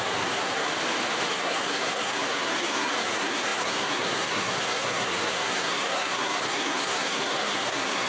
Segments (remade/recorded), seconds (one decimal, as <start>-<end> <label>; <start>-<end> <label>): 0.0-0.7 remade; 0.7-1.3 recorded; 1.3-8.1 remade